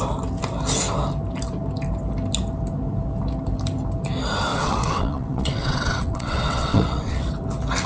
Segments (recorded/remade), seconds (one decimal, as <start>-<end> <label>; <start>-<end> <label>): 0.0-4.5 recorded; 4.5-7.3 remade; 7.3-7.9 recorded